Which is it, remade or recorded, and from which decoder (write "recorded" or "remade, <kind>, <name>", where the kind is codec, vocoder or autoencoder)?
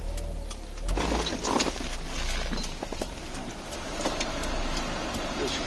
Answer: recorded